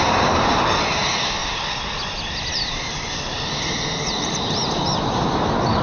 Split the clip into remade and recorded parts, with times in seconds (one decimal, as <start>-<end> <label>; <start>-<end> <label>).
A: 0.0-1.4 remade; 1.4-3.7 recorded; 3.7-5.8 remade